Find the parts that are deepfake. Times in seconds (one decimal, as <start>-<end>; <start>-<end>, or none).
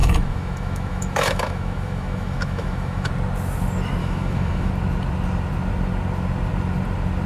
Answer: 0.0-3.1; 4.0-4.7